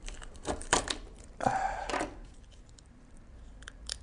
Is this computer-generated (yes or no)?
yes